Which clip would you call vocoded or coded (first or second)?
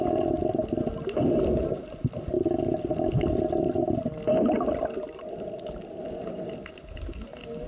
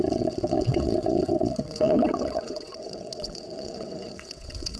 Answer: second